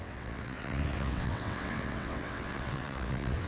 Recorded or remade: remade